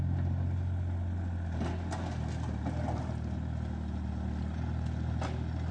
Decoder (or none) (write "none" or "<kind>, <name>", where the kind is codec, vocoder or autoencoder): none